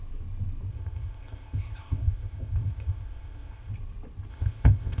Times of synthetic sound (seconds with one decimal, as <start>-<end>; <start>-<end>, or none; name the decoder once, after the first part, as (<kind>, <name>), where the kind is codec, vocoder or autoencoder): 0.7-3.7 (codec, ZipCodec); 4.3-5.0